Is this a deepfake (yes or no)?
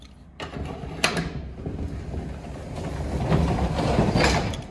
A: no